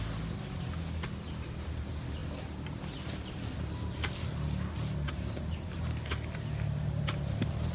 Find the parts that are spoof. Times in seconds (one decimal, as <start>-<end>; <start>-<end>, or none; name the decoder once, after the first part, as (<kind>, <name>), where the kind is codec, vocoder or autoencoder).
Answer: none